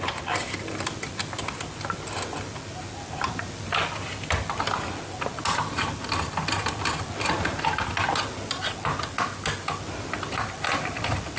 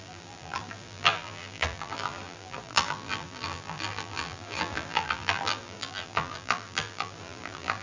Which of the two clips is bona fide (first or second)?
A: first